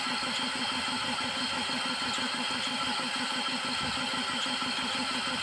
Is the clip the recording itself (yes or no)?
yes